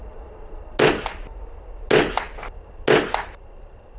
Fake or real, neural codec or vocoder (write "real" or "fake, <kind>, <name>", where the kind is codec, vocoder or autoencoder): real